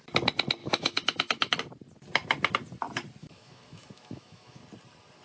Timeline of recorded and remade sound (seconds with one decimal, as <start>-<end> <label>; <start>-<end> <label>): 0.0-0.6 recorded; 0.6-1.6 remade; 1.6-3.2 recorded; 3.2-4.6 remade; 4.6-5.2 recorded